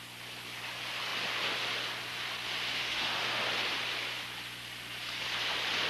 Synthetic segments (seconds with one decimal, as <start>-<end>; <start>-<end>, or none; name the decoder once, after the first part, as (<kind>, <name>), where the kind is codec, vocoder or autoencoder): 2.7-3.4 (autoencoder, DAC-VAE)